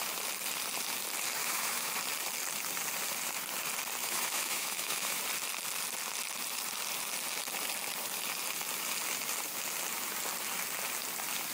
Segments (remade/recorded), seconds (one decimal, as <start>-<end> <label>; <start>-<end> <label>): 0.0-1.4 recorded; 1.4-1.9 remade; 1.9-4.0 recorded; 4.0-5.2 remade; 5.2-11.5 recorded